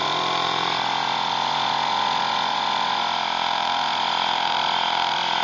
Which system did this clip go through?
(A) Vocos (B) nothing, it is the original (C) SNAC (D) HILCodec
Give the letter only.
A